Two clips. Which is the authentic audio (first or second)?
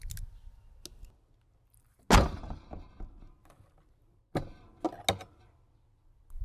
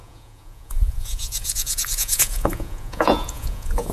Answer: first